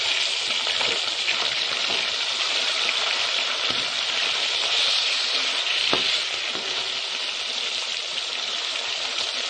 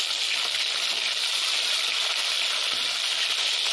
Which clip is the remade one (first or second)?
first